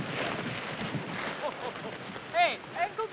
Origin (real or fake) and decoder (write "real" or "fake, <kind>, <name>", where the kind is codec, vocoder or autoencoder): real